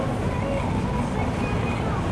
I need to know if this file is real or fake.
real